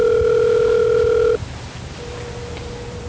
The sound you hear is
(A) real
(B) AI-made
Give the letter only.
B